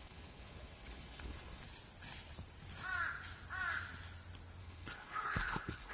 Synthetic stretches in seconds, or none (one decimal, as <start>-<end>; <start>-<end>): 0.0-1.6; 4.6-5.9